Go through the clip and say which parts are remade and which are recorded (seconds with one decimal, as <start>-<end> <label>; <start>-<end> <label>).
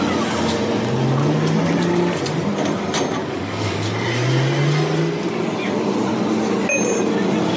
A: 0.0-3.2 recorded; 3.2-3.8 remade; 3.8-7.6 recorded